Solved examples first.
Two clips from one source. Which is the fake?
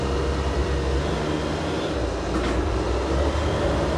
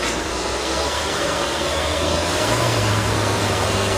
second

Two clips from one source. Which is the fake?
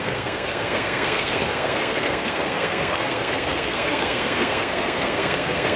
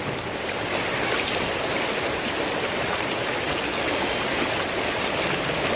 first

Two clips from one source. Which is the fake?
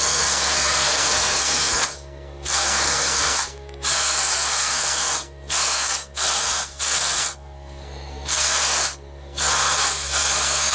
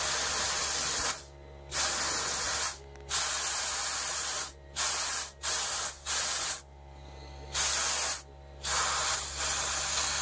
first